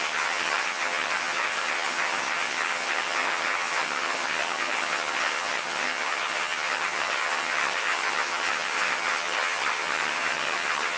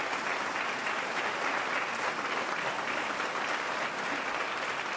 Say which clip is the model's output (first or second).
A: first